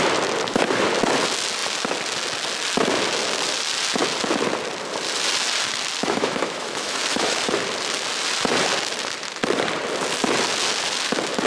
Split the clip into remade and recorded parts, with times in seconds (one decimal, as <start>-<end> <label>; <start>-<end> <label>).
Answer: 0.0-6.0 recorded; 6.0-7.5 remade; 7.5-11.5 recorded